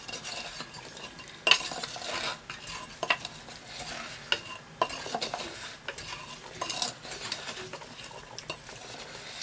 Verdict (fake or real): real